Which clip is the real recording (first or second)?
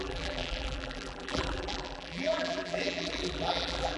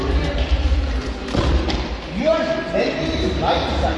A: second